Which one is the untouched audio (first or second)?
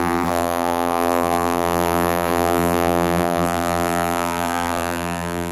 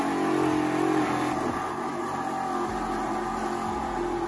second